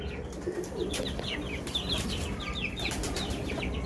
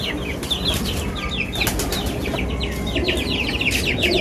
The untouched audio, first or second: second